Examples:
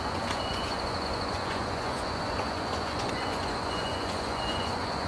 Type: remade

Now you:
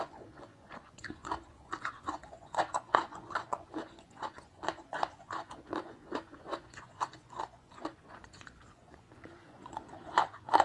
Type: remade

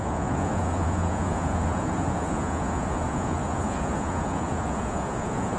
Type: remade